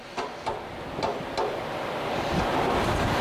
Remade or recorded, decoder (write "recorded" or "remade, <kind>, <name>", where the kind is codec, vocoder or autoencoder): recorded